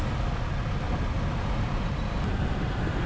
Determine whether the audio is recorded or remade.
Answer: recorded